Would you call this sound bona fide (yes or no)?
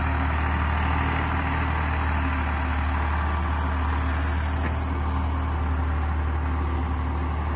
yes